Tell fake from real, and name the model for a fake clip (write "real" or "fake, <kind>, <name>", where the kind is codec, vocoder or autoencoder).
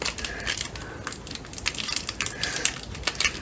real